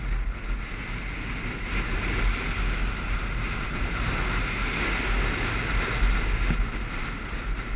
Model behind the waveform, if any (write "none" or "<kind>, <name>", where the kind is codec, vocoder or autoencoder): none